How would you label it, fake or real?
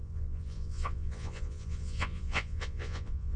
fake